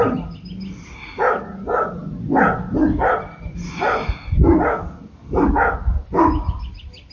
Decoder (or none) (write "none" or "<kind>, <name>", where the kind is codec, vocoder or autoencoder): none